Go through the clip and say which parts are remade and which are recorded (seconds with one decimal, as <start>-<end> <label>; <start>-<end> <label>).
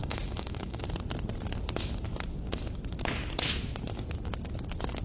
0.0-0.8 remade; 0.8-5.0 recorded